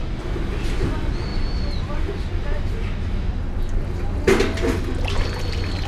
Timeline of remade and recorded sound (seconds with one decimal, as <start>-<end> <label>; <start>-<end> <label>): 0.0-5.9 recorded